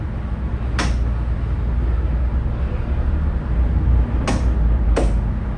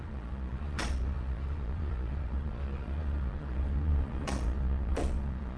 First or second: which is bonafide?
first